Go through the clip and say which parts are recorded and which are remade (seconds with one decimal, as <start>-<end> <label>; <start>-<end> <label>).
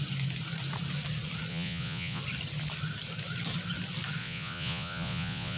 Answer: 0.0-1.5 recorded; 1.5-2.2 remade; 2.2-4.2 recorded; 4.2-5.6 remade